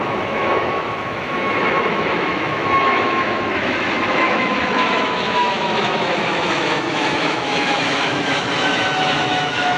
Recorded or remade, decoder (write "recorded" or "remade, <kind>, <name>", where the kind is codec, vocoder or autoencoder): remade, autoencoder, DAC-VAE